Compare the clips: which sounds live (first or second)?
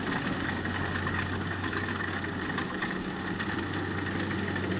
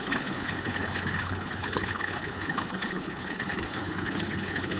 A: first